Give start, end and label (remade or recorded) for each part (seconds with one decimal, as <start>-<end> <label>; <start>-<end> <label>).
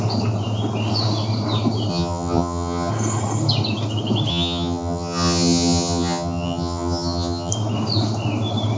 0.0-1.9 recorded; 1.9-2.9 remade; 2.9-4.3 recorded; 4.3-7.5 remade; 7.5-8.8 recorded